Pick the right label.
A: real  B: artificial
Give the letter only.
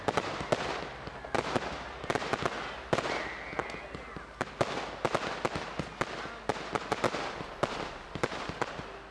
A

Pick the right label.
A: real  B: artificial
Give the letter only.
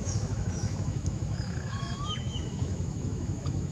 B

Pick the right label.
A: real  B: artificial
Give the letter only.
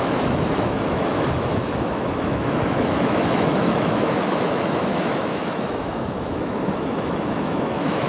B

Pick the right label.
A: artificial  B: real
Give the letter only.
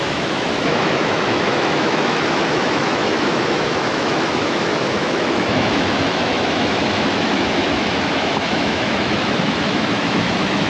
A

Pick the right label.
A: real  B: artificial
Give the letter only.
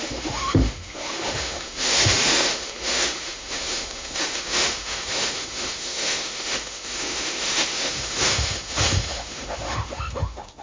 B